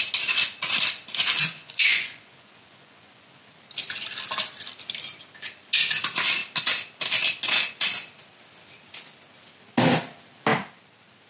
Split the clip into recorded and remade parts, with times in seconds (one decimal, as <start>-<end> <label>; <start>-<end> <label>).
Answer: 0.0-1.4 recorded; 1.4-3.5 remade; 3.5-11.3 recorded